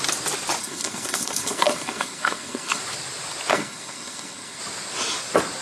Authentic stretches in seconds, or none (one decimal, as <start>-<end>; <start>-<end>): 0.0-0.6; 2.8-3.5; 4.6-5.6